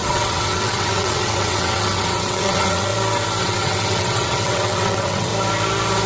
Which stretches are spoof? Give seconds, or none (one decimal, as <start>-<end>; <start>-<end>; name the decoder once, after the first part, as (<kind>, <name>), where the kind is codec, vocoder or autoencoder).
0.0-2.9 (vocoder, WaveNeXt); 3.4-5.3